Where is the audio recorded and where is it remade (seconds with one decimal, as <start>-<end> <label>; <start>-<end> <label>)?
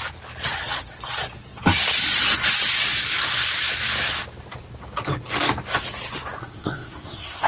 0.0-6.4 recorded; 6.4-7.5 remade